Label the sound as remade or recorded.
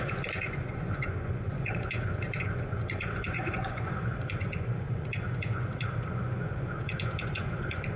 remade